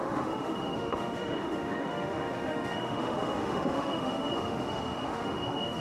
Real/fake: fake